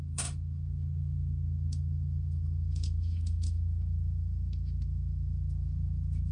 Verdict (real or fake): fake